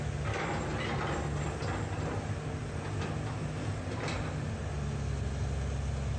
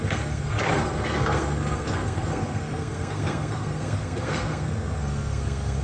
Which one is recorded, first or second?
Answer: first